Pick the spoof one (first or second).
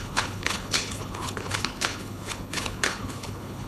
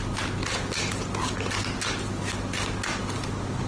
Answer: first